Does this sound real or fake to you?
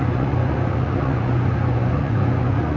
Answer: fake